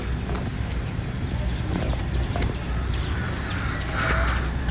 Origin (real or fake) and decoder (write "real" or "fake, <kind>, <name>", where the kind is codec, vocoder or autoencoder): real